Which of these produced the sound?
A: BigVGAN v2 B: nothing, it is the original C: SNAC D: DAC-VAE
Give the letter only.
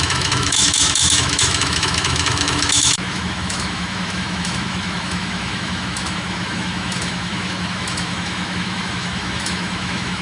D